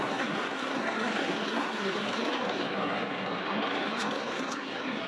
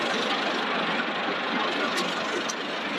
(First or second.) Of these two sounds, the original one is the second